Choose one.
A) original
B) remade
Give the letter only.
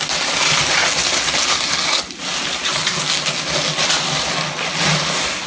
A